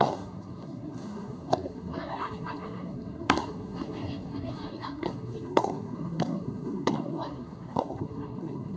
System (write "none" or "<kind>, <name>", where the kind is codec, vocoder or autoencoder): codec, SNAC